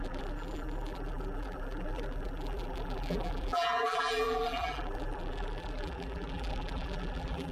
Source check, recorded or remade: remade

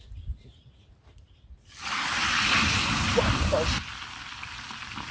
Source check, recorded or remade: recorded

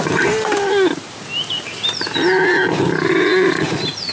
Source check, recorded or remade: recorded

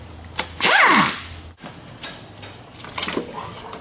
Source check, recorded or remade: recorded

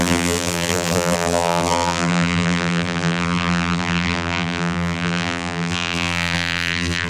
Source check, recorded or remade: remade